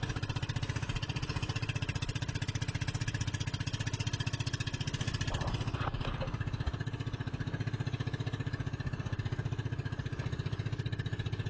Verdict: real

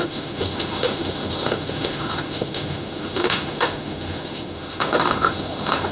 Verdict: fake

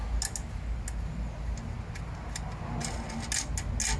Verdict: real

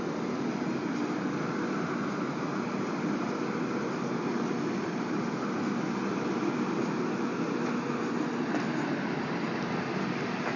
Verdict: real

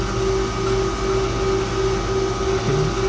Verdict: real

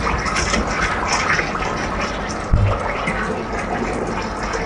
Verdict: real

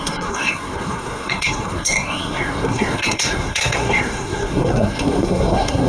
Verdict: fake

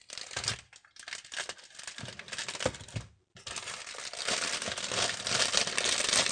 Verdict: real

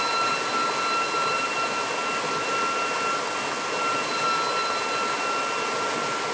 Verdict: real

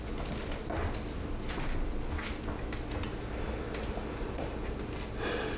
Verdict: real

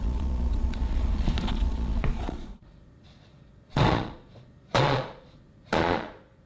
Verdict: fake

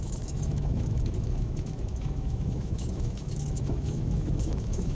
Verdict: fake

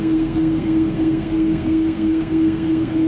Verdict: fake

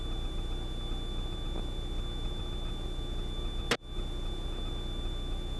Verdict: real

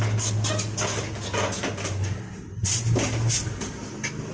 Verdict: real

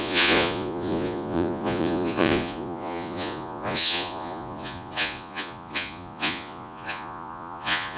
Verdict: fake